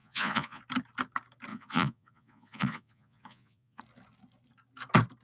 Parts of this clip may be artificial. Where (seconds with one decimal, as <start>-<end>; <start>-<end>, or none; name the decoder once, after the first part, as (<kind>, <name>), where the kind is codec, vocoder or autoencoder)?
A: 0.0-0.6 (vocoder, Vocos); 1.5-3.8